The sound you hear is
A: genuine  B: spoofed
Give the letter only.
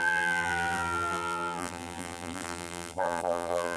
B